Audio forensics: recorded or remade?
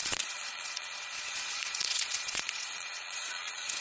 remade